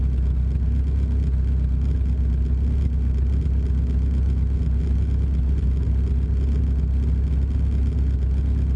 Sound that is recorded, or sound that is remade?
recorded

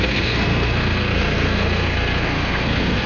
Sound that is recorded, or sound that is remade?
remade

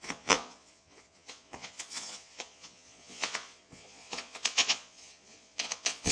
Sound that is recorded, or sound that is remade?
remade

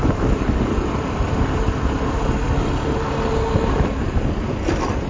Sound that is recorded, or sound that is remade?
recorded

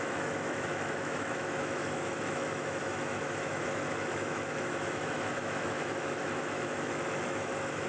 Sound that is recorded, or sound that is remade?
remade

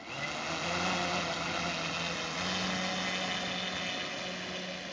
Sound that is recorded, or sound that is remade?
recorded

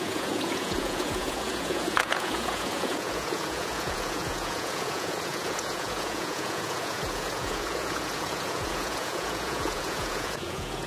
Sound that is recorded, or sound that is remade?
remade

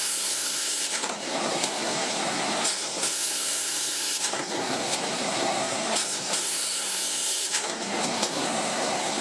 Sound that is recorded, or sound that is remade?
remade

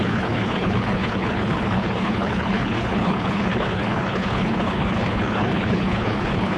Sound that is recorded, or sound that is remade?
remade